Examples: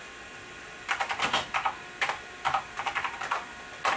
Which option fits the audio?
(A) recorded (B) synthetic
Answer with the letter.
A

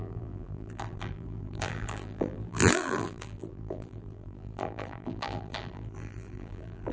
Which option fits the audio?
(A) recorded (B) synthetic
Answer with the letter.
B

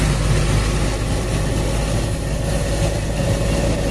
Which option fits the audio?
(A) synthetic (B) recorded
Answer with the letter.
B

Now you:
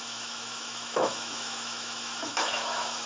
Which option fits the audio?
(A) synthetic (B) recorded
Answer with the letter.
A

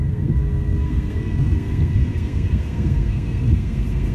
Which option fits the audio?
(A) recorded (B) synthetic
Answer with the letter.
B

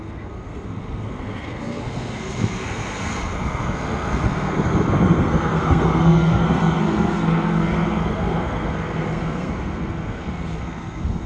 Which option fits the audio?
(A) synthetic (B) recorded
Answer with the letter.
A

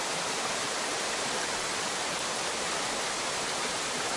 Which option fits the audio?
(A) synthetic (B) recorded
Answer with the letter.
A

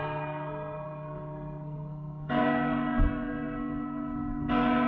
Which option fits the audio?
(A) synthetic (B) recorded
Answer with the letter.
A